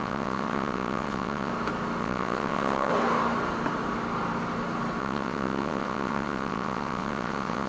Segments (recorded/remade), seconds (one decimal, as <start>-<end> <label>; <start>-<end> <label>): 0.0-1.5 remade; 1.5-2.0 recorded; 2.0-2.9 remade; 2.9-5.0 recorded; 5.0-7.7 remade